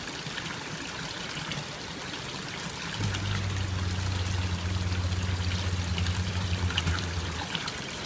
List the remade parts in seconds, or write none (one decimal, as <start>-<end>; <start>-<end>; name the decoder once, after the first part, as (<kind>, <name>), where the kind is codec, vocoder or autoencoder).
0.0-2.0 (vocoder, BigVGAN v2); 5.9-8.1